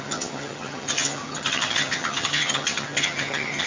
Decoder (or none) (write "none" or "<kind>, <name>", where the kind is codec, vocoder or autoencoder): vocoder, HiFi-GAN